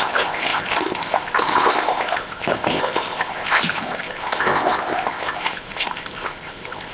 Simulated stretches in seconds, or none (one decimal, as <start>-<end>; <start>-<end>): 0.0-6.9